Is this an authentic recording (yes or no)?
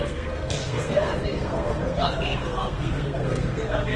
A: no